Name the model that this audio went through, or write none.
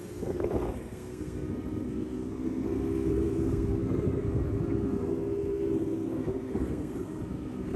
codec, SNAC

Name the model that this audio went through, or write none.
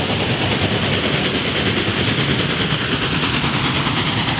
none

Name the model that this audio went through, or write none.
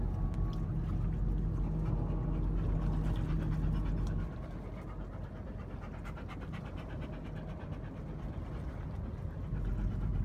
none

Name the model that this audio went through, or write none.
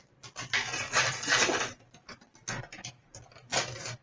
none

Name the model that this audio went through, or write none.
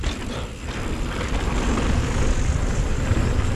vocoder, BigVGAN v2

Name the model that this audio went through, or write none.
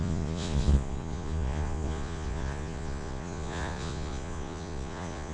vocoder, Vocos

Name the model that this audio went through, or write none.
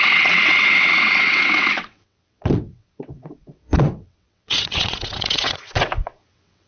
vocoder, WaveNeXt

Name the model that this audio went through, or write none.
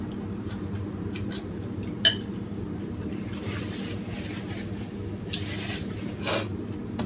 none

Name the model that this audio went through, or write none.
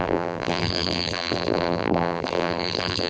vocoder, BigVGAN v2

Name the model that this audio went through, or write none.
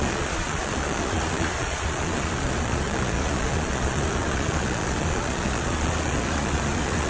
vocoder, Vocos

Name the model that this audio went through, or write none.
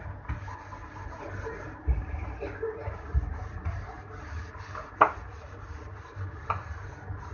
none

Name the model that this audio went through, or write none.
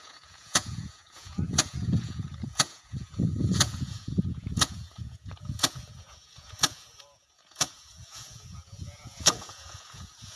vocoder, Vocos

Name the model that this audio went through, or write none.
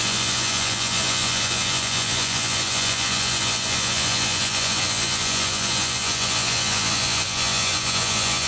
vocoder, Vocos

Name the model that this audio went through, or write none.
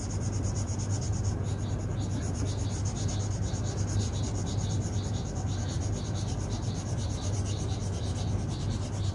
none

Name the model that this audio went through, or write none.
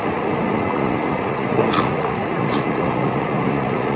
vocoder, Vocos